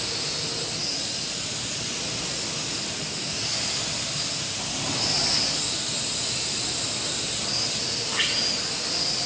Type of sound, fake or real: real